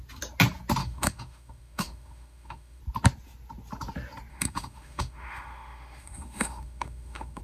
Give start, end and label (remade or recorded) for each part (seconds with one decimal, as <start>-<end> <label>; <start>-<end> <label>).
0.0-0.8 recorded; 0.8-2.8 remade; 2.8-4.3 recorded; 4.3-7.4 remade